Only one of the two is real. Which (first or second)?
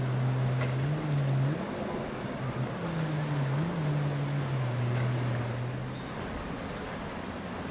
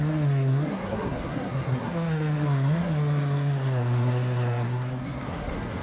first